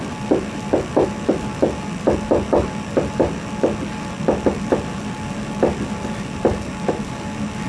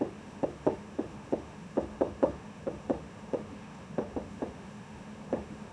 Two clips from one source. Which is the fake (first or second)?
second